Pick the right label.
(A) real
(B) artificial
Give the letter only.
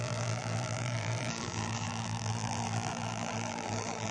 B